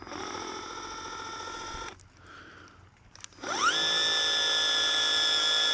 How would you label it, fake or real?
real